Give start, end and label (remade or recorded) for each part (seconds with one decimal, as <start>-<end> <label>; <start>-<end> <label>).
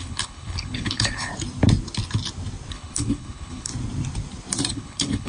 0.0-1.3 remade; 1.3-2.7 recorded; 2.7-3.7 remade; 3.7-4.7 recorded; 4.7-5.3 remade